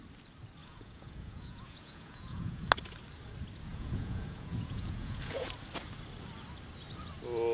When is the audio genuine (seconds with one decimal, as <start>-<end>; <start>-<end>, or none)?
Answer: 0.0-0.6; 2.7-3.7; 5.5-7.5